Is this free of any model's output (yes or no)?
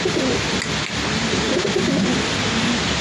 yes